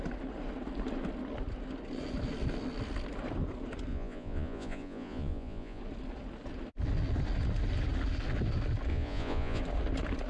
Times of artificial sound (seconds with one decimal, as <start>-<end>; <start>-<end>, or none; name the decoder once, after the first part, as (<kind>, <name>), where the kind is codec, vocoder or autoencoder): 3.9-5.8 (vocoder, Vocos); 8.9-9.6